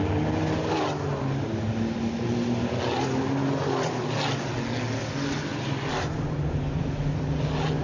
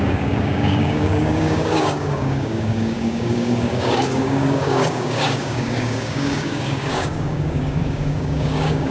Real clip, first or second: first